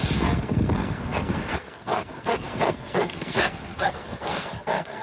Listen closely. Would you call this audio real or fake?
fake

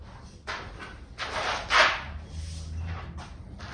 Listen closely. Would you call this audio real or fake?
real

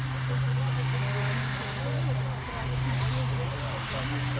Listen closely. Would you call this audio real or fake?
real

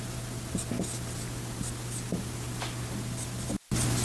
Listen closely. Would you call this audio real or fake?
real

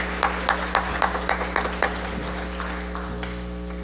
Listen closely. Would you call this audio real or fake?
real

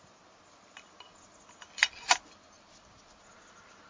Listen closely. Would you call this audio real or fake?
real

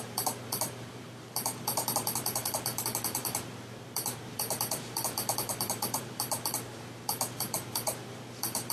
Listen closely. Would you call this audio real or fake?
fake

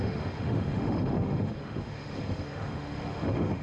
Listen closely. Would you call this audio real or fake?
fake